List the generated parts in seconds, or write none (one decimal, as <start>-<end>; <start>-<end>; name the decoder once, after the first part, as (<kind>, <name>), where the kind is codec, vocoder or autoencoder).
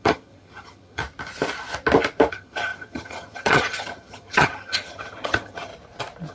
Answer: 0.0-1.0 (vocoder, HiFi-GAN); 2.3-5.7